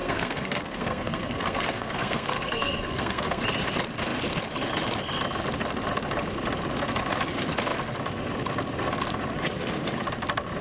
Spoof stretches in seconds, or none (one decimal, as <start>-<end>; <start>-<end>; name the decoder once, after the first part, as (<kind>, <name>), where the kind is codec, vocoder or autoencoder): 0.0-3.4 (codec, SNAC)